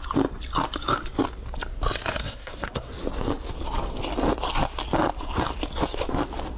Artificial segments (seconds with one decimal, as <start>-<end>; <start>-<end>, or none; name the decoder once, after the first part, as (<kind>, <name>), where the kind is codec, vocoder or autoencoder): 2.2-2.9 (codec, SNAC)